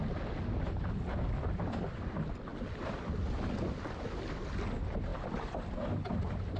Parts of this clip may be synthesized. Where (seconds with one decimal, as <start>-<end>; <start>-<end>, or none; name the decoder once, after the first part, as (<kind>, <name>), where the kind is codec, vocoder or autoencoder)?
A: none